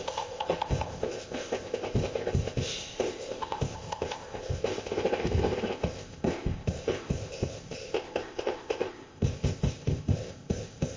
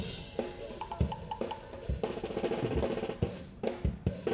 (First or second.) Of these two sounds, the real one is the second